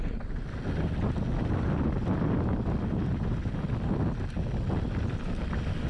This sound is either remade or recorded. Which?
recorded